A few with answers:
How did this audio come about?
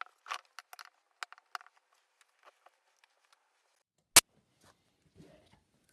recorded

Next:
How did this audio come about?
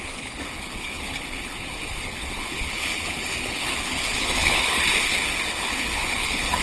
remade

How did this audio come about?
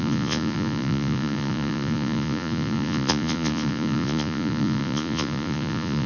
remade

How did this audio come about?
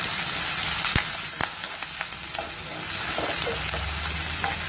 recorded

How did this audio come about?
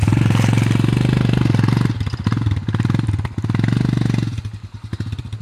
recorded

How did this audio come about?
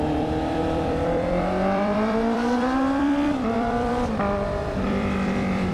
remade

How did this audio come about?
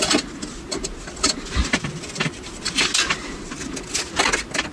recorded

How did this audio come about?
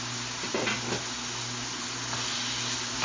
recorded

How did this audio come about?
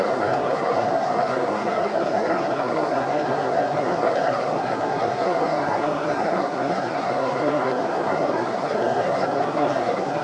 remade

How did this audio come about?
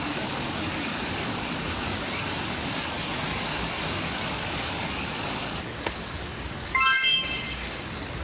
remade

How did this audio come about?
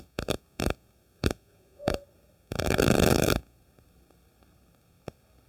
remade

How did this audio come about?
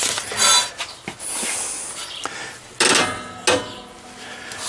recorded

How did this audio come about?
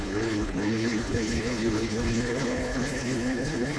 remade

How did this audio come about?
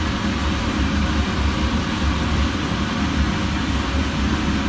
recorded